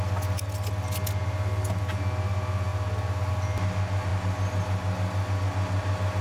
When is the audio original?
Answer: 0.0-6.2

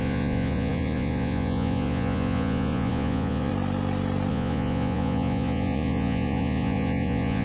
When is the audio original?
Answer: 3.5-4.3

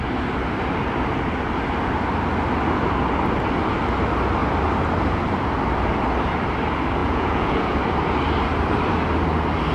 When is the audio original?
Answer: 0.0-7.0; 7.8-9.7

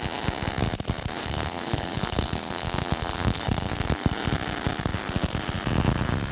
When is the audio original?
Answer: 0.0-1.2; 4.1-6.3

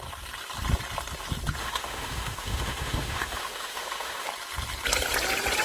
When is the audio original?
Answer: 0.0-1.6; 4.3-5.6

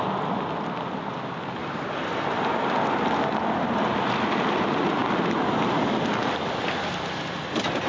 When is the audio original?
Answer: 0.0-7.9

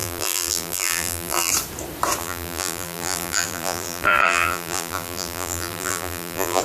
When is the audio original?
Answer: 1.5-2.2